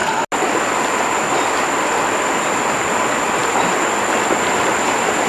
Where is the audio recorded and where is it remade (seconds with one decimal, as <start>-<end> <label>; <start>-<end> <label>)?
0.0-5.3 recorded